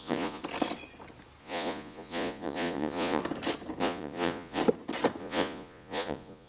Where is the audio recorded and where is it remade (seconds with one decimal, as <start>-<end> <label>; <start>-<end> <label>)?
0.0-0.4 remade; 0.4-1.4 recorded; 1.4-3.2 remade; 3.2-3.8 recorded; 3.8-4.6 remade; 4.6-5.2 recorded; 5.2-6.5 remade